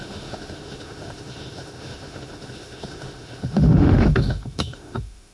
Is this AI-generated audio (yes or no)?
yes